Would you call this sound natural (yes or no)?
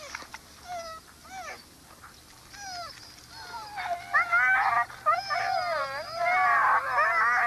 yes